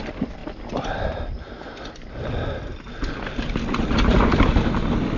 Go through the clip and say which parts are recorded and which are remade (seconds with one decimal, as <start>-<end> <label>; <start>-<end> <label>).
0.0-0.4 recorded; 0.4-1.4 remade; 1.4-5.2 recorded